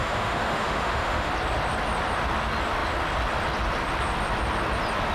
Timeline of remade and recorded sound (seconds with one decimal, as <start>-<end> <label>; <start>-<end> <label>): 0.0-1.3 remade; 1.3-5.1 recorded